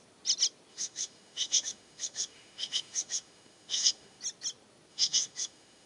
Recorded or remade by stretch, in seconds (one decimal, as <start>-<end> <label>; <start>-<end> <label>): 0.0-0.7 recorded; 0.7-4.2 remade; 4.2-4.9 recorded; 4.9-5.9 remade